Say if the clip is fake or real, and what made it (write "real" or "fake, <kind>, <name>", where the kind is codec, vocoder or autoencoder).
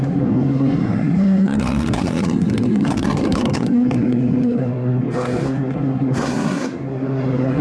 fake, codec, SNAC